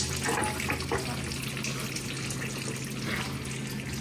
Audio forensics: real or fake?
real